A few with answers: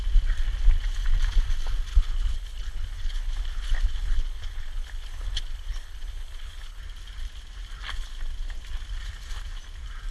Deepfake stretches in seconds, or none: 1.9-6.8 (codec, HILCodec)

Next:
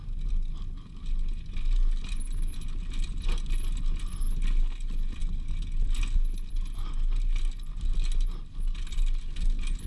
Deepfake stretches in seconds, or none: none

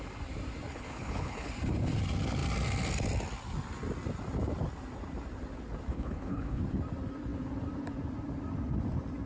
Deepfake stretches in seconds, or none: 0.7-1.5 (codec, HILCodec); 5.9-6.6

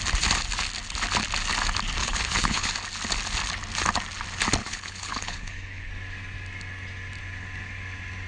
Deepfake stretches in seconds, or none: 2.0-2.7 (codec, HILCodec); 4.6-5.9

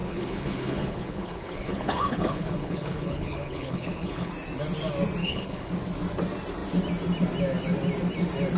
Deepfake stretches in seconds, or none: 0.0-4.3 (codec, HILCodec); 5.2-5.7

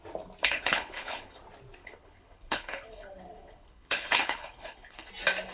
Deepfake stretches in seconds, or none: 0.4-1.4 (codec, HILCodec); 1.8-5.1

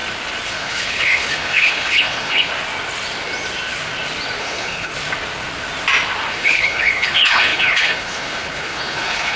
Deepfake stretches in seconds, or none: 0.5-2.5 (codec, HILCodec); 4.4-4.9; 6.3-9.4